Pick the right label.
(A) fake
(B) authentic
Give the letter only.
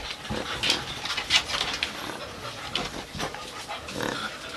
B